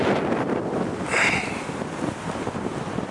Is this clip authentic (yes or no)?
yes